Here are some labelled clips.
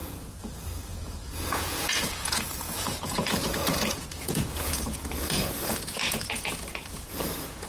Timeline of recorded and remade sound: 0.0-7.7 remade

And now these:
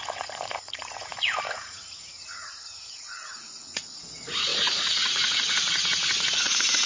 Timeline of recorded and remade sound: 0.0-6.9 remade